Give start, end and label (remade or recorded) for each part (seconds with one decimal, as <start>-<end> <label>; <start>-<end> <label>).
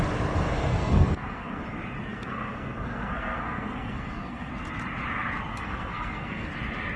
0.0-0.7 recorded; 0.7-1.6 remade; 1.6-2.1 recorded; 2.1-4.5 remade; 4.5-5.5 recorded; 5.5-6.5 remade; 6.5-7.0 recorded